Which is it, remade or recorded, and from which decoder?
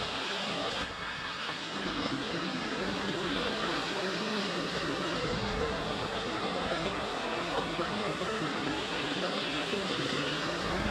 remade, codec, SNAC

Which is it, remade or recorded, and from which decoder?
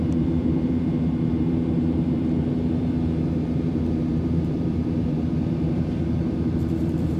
remade, vocoder, BigVGAN v2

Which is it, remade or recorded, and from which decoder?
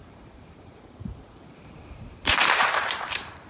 remade, vocoder, BigVGAN v2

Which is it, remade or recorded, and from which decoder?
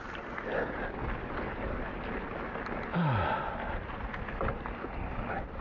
recorded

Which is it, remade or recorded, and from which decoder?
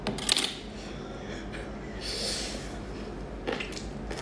recorded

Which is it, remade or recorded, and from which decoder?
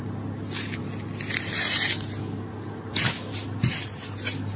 recorded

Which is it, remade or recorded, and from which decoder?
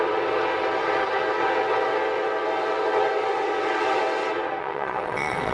remade, vocoder, WaveNeXt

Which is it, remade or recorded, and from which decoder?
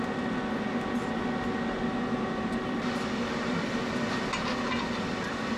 recorded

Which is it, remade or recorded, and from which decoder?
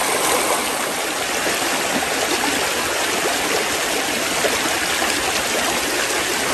recorded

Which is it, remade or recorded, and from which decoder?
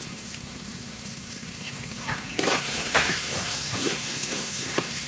remade, codec, SNAC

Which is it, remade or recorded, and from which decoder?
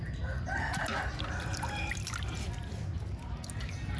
recorded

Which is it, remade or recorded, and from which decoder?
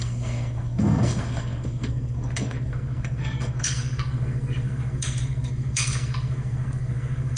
remade, codec, SNAC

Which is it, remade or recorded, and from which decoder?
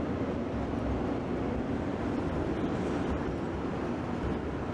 recorded